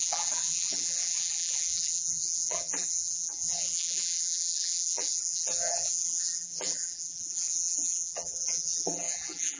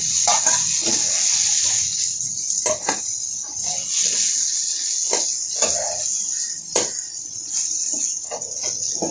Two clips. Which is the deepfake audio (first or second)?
first